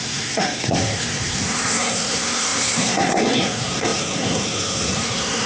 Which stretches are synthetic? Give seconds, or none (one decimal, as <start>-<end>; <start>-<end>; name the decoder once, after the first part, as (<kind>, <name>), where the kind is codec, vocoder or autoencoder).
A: 0.0-5.5 (codec, SNAC)